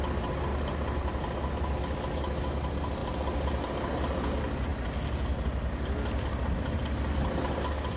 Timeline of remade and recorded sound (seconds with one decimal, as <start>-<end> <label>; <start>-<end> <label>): 0.0-0.5 recorded; 0.5-1.2 remade; 1.2-8.0 recorded